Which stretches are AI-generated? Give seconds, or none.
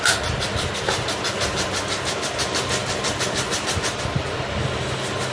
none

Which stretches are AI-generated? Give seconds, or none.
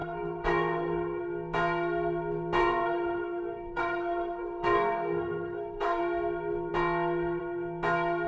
0.0-1.2 (codec, SNAC); 2.6-6.0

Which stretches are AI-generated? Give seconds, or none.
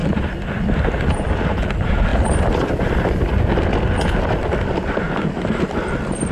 none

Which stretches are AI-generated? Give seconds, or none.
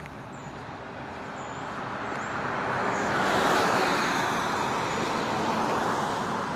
2.8-4.3 (autoencoder, DAC-VAE)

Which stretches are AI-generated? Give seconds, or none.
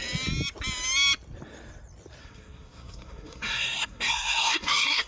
2.2-5.1 (codec, SNAC)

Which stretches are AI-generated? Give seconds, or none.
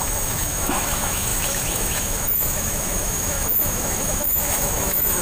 0.0-5.2 (autoencoder, DAC-VAE)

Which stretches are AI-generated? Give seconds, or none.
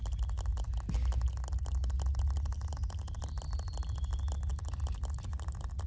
none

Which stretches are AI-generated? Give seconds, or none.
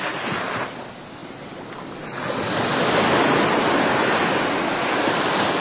none